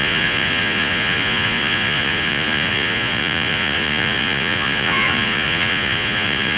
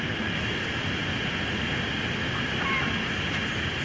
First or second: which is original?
second